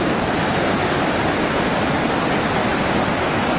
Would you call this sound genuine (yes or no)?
yes